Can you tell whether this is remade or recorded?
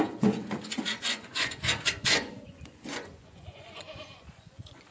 remade